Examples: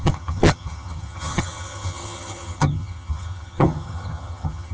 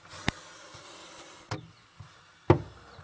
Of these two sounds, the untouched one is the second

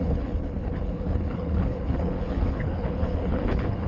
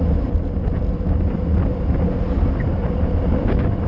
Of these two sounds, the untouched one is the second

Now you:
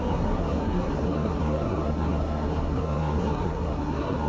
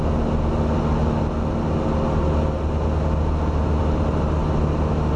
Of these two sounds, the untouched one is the second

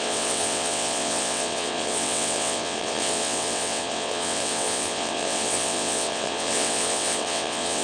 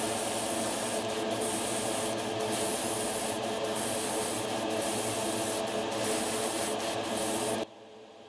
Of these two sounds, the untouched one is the second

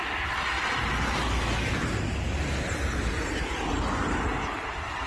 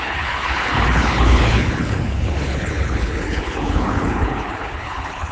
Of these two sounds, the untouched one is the first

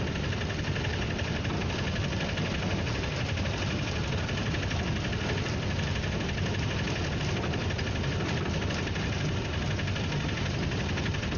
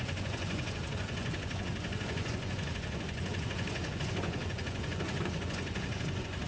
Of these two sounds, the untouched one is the first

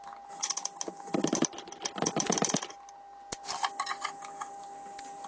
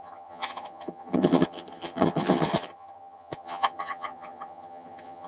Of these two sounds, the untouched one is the first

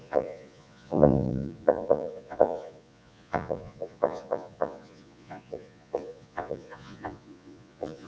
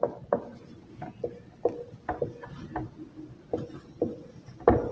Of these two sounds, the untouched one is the second